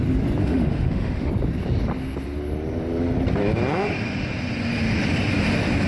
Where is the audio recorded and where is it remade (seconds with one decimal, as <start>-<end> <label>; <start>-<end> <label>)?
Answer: 0.0-0.4 recorded; 0.4-1.3 remade; 1.3-5.9 recorded